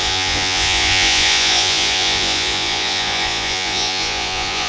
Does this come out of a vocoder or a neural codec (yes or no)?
yes